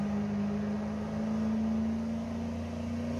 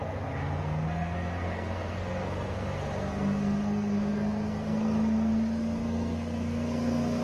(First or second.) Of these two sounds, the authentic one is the first